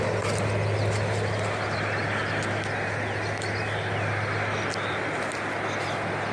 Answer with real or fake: real